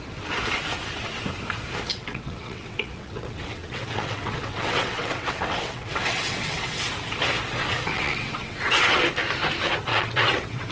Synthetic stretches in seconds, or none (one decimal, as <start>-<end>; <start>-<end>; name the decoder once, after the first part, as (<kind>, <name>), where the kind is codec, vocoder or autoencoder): 1.9-6.9 (vocoder, WaveNeXt); 7.6-9.0; 9.9-10.7